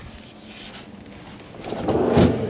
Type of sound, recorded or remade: recorded